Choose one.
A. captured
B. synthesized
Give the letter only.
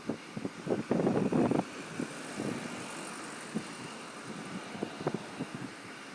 A